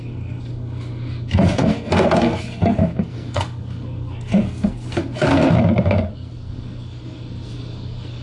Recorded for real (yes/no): no